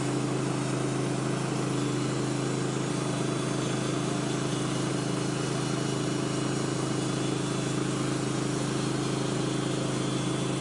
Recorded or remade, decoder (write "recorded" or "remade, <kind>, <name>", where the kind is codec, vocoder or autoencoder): recorded